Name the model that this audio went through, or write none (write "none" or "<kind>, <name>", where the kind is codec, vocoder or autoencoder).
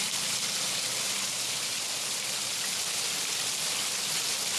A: none